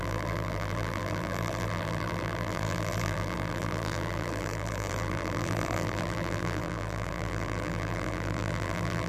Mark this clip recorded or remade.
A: remade